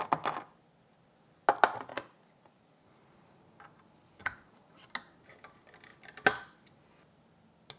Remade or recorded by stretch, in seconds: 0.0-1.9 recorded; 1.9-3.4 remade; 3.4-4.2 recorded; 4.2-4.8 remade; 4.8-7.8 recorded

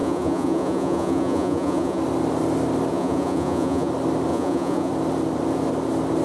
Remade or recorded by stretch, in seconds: 0.0-2.0 remade; 2.0-2.9 recorded; 2.9-3.9 remade; 3.9-4.3 recorded; 4.3-4.9 remade; 4.9-6.2 recorded

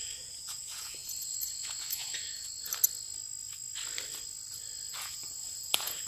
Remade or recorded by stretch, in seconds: 0.0-2.7 remade; 2.7-4.9 recorded; 4.9-6.1 remade

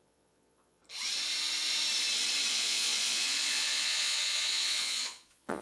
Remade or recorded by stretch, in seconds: 0.0-0.8 remade; 0.8-2.5 recorded; 2.5-5.6 remade

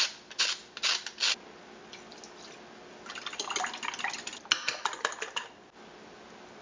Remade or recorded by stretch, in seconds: 0.0-6.6 recorded

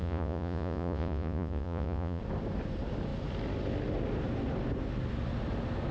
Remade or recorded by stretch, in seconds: 0.0-2.2 remade; 2.2-5.9 recorded

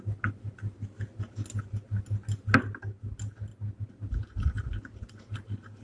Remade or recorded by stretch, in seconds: 0.0-5.8 recorded